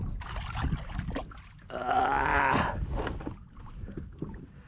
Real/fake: real